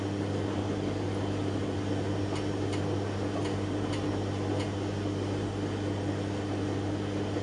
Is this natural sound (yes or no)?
yes